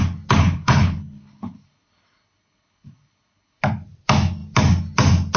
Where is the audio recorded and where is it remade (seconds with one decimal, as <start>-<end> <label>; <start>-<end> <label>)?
0.0-0.4 recorded; 0.4-3.6 remade; 3.6-5.4 recorded